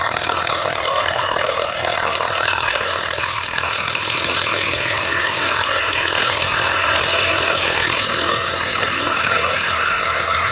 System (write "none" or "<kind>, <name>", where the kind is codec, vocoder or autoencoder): codec, SNAC